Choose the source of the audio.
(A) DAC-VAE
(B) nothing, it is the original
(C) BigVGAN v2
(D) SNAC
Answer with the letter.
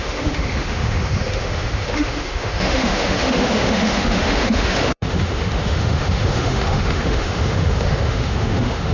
A